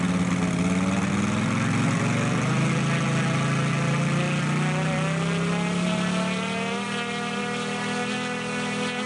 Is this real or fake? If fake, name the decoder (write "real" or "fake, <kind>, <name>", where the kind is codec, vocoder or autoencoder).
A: real